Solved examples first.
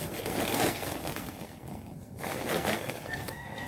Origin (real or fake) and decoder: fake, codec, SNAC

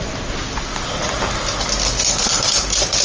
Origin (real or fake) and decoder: real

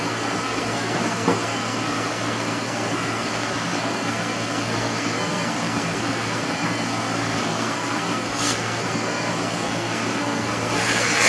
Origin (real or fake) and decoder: fake, codec, SNAC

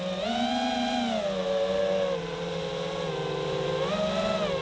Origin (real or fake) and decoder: real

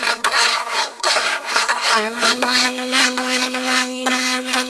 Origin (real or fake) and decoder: fake, codec, SNAC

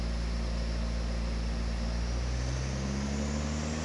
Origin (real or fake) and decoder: real